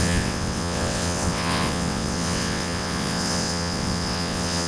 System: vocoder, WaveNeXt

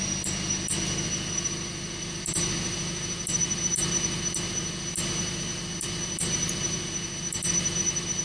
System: none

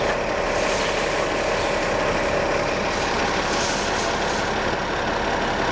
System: none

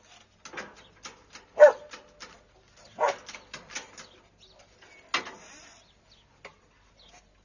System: none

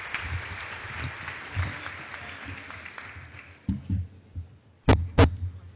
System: none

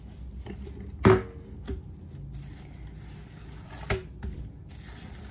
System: none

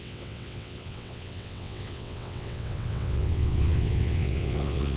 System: vocoder, WaveNeXt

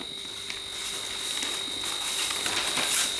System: none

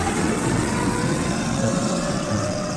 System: vocoder, WaveNeXt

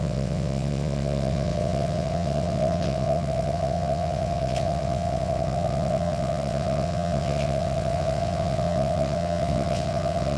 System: vocoder, WaveNeXt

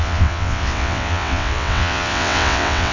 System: vocoder, WaveNeXt